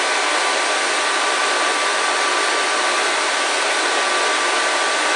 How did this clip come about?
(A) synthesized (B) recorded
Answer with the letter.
B